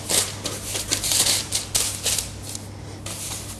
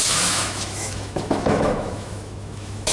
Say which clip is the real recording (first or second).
first